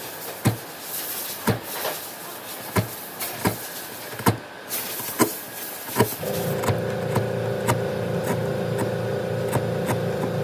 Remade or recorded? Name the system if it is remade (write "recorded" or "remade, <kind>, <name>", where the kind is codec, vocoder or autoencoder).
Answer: recorded